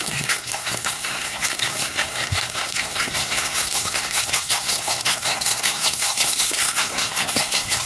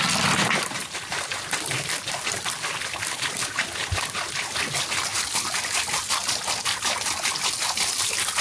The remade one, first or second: first